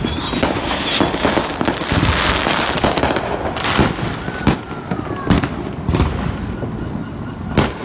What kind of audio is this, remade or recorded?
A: recorded